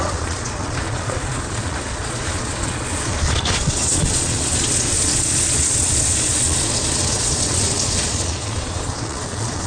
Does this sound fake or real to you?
fake